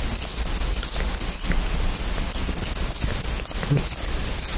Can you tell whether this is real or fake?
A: real